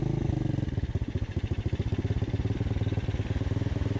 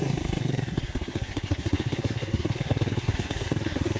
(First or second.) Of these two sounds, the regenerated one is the second